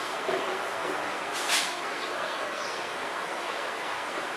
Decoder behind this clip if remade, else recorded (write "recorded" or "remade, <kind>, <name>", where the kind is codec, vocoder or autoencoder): remade, codec, SNAC